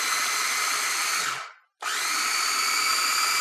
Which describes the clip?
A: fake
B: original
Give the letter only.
B